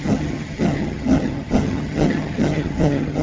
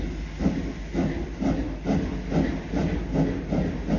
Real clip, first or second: second